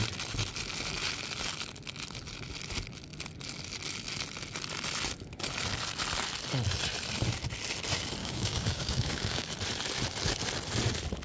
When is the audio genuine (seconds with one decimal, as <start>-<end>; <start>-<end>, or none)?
0.0-8.2; 9.5-11.2